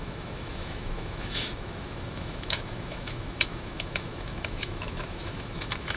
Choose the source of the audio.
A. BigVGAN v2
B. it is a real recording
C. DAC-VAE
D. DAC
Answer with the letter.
C